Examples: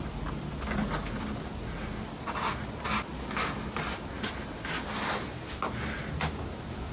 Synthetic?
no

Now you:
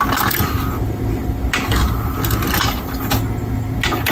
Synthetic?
no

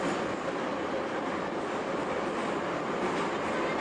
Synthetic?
no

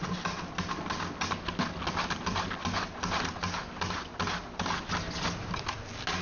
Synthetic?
no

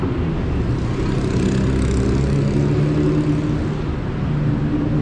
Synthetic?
no